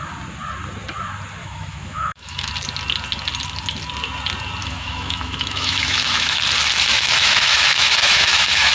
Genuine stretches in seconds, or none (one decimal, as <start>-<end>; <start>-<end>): 0.0-1.4; 2.5-4.6; 6.4-6.9